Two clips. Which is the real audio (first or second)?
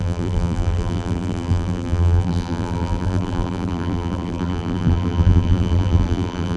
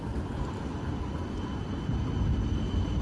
second